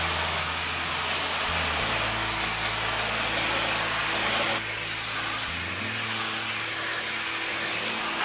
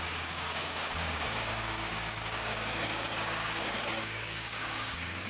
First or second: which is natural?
first